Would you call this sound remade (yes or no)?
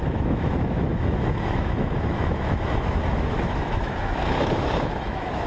yes